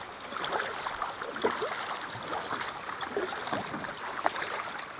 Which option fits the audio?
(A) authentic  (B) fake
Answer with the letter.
A